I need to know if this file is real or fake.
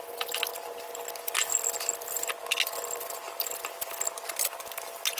real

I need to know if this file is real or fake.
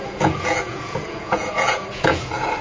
fake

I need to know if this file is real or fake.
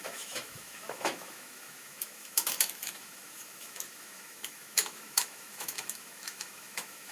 fake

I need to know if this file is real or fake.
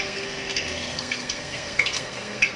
fake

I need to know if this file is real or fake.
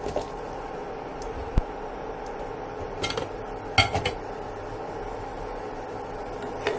real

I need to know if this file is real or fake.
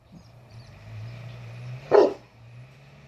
fake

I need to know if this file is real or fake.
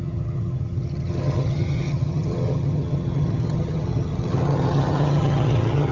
fake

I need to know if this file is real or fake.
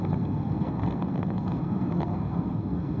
fake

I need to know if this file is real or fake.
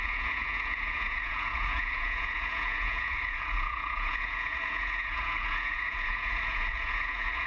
fake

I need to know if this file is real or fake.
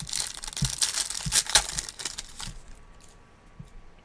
real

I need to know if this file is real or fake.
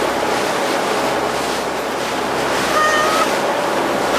real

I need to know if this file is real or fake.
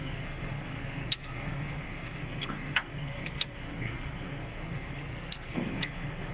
fake